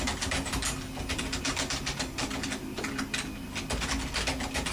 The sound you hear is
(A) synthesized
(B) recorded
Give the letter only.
B